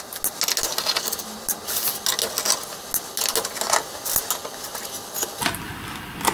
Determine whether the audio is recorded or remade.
recorded